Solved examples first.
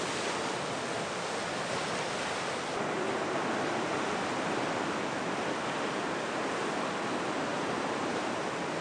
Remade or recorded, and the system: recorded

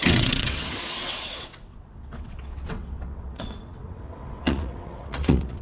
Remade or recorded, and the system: remade, vocoder, WaveNeXt